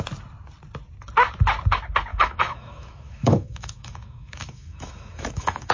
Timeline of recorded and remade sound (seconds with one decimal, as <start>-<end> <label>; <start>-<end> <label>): 0.0-2.1 recorded; 2.1-5.7 remade